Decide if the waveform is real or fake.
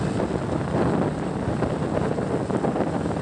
real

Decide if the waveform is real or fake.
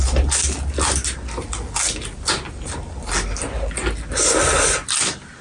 real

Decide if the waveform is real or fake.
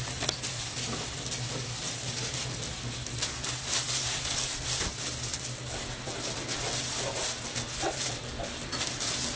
real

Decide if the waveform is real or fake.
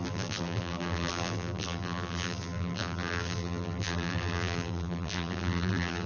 fake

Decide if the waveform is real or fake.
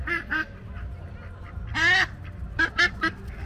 real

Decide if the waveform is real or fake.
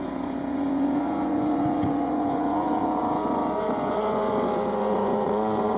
fake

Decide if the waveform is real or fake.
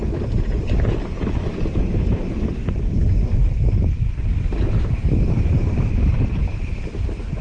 real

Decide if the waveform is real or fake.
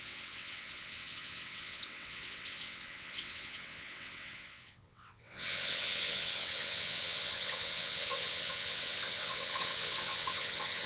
fake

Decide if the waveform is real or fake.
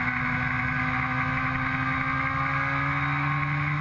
real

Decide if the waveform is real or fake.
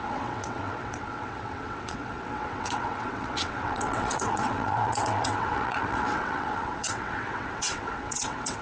fake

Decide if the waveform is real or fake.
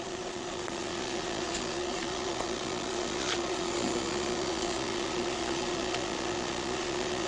fake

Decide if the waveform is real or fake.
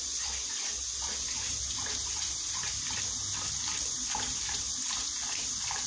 real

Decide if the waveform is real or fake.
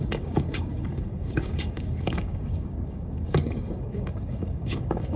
fake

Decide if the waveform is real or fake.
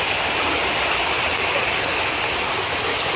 real